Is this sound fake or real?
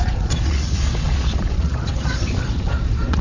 fake